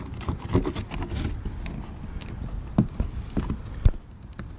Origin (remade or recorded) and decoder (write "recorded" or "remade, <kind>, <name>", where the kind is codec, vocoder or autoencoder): recorded